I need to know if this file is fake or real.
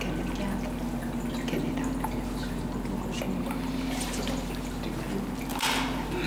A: real